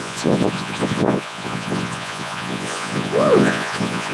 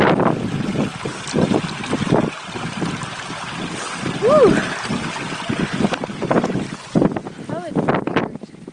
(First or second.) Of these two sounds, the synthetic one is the first